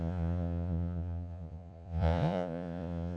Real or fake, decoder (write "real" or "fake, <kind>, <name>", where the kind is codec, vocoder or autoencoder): fake, vocoder, Vocos